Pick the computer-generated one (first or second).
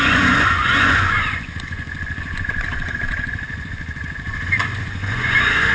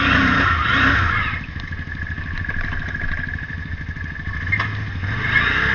first